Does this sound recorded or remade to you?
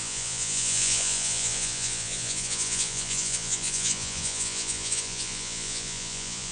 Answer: remade